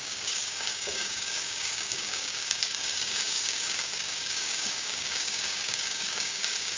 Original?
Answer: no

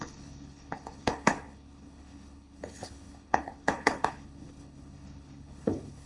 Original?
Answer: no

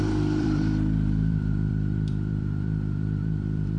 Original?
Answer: no